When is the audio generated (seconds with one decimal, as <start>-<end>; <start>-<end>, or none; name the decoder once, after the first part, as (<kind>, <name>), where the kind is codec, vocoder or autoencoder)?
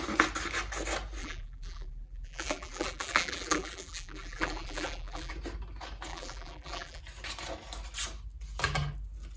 1.2-5.3 (vocoder, BigVGAN v2); 6.1-7.0